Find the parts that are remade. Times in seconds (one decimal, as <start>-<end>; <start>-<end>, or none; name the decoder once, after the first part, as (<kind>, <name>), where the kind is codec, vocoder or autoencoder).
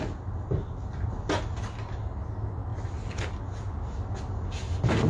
none